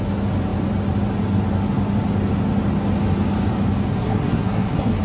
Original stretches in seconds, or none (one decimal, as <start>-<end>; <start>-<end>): 0.0-3.9